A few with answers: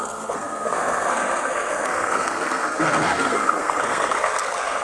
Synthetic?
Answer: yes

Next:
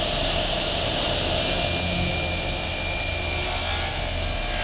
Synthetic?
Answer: no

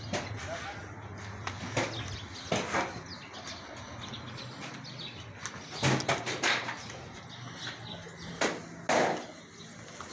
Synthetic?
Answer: no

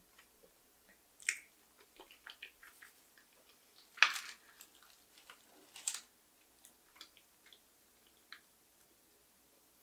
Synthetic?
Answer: no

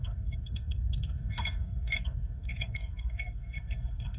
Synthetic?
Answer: yes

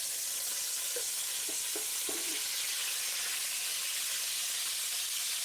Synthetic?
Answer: no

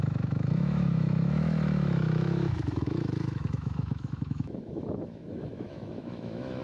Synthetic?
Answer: yes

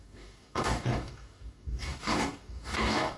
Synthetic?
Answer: yes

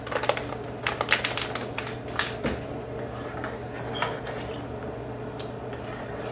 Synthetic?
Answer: no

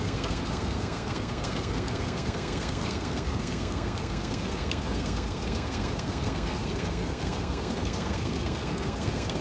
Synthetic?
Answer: yes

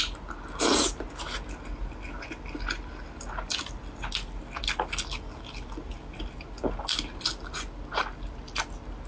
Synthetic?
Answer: no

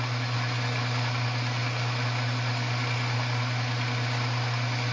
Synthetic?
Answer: no